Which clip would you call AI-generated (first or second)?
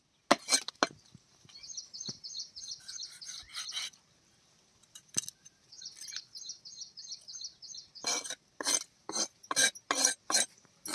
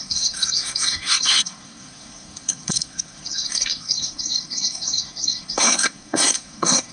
second